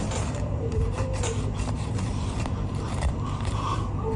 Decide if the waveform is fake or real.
fake